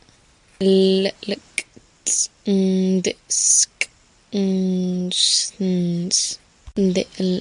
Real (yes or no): yes